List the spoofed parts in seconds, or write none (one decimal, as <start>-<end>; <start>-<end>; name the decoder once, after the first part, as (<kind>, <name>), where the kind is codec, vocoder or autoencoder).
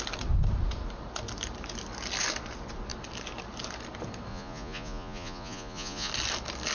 4.3-6.1 (vocoder, Vocos)